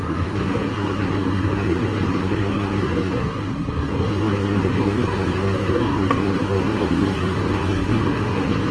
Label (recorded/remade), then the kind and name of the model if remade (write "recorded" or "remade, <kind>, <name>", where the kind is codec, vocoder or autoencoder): remade, codec, SNAC